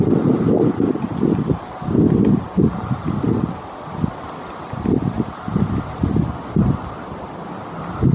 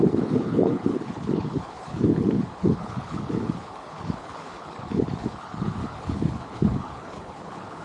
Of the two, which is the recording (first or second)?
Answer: first